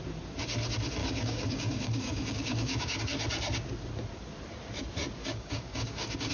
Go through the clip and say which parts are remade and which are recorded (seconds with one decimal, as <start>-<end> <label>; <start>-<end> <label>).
0.0-1.0 recorded; 1.0-3.0 remade; 3.0-5.2 recorded; 5.2-6.3 remade